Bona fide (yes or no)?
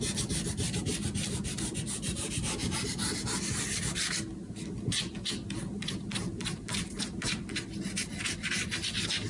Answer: no